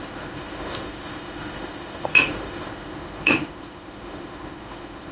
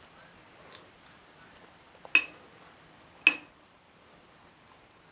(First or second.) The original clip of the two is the second